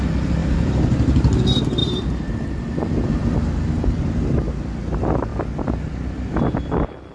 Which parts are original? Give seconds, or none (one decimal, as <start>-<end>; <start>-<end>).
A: 0.0-0.4; 1.4-1.8; 3.7-7.1